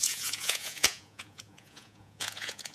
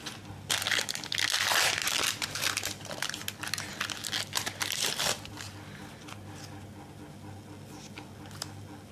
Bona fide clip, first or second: second